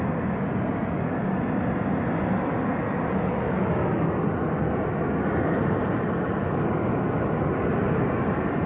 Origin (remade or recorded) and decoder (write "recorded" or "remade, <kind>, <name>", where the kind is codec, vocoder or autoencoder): recorded